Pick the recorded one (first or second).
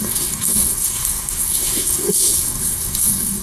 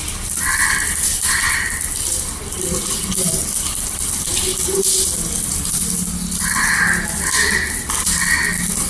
second